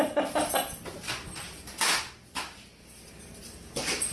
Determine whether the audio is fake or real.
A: real